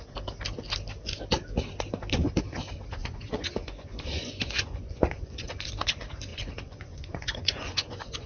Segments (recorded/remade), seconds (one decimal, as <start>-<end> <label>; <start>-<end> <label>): 0.0-3.0 recorded; 3.0-5.5 remade; 5.5-6.3 recorded; 6.3-8.3 remade